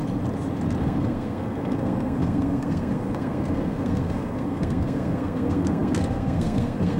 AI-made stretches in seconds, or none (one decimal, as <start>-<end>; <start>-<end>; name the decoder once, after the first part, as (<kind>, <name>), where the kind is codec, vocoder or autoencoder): 0.8-7.0 (codec, SNAC)